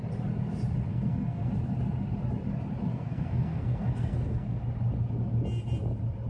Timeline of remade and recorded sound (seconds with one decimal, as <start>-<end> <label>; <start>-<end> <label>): 0.0-0.9 recorded; 0.9-1.5 remade; 1.5-2.9 recorded; 2.9-4.6 remade; 4.6-6.3 recorded